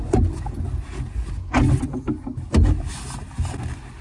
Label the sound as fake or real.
real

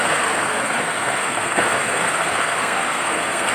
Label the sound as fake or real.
fake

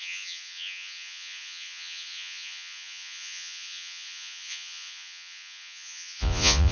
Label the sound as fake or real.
fake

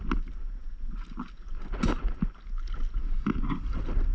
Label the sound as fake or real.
real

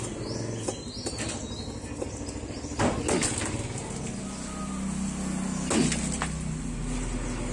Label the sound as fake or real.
real